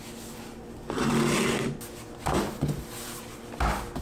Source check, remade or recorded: recorded